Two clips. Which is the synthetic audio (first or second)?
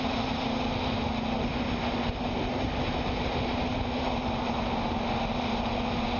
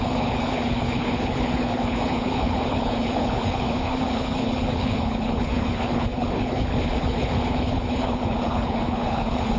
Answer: second